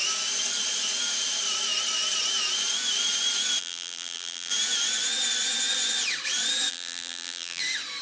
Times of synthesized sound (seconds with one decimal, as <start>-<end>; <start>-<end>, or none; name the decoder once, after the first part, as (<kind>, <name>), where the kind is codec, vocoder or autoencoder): 3.6-4.5 (vocoder, BigVGAN v2); 6.7-7.6